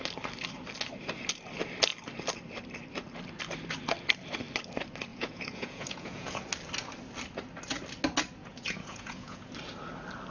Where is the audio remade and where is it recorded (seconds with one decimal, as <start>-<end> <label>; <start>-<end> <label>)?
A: 0.0-5.1 recorded; 5.1-6.4 remade; 6.4-8.4 recorded; 8.4-9.5 remade; 9.5-10.3 recorded